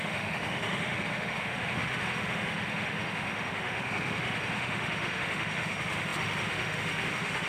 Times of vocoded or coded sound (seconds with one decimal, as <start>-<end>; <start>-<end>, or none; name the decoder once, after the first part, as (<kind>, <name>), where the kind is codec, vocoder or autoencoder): 0.0-7.5 (autoencoder, DAC-VAE)